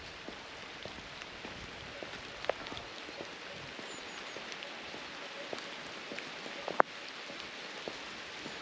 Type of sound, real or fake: real